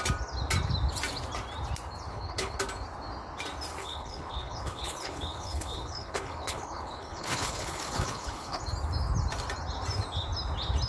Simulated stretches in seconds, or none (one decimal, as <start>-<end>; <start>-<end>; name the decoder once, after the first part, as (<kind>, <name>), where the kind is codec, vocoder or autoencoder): 2.1-2.6 (codec, HILCodec); 3.8-8.6

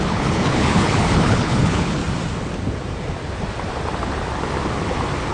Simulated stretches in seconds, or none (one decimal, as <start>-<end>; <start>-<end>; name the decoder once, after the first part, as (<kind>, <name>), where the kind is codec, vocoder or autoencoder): 0.0-2.0 (codec, HILCodec)

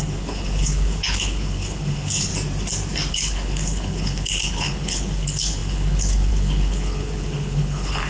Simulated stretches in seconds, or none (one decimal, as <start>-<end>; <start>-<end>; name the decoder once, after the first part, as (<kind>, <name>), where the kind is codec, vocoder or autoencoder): 0.0-2.3 (codec, HILCodec); 3.1-8.1

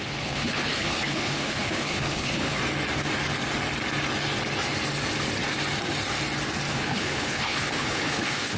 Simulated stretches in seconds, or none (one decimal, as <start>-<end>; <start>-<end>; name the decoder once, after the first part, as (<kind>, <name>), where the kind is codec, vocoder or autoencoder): 0.0-2.6 (codec, HILCodec); 6.7-8.6

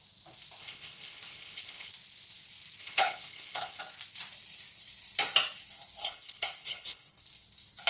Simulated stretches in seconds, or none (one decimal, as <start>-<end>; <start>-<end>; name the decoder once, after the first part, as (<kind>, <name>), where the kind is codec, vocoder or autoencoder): 0.6-1.9 (codec, HILCodec); 2.8-3.8; 6.0-7.2

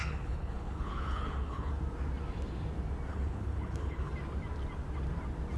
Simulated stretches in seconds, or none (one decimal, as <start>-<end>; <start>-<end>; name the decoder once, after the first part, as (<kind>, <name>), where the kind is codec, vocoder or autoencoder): 0.0-1.7 (codec, HILCodec); 3.1-4.1

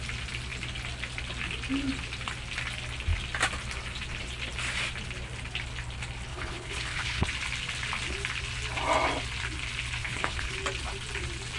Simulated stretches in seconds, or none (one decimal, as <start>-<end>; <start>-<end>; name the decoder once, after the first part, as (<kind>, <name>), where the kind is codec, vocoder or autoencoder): 6.3-7.3 (codec, HILCodec); 10.0-10.5

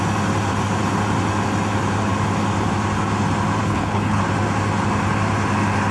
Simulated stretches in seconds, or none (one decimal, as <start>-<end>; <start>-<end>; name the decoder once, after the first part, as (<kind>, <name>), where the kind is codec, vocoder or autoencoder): 3.6-4.2 (codec, HILCodec)